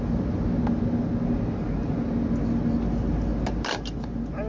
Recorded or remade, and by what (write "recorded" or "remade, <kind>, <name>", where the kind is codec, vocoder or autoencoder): recorded